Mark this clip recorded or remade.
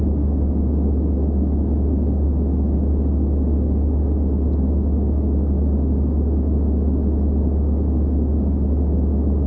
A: recorded